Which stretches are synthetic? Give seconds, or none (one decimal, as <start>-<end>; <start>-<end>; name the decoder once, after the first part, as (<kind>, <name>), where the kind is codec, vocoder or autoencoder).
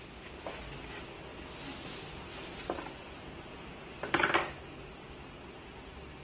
none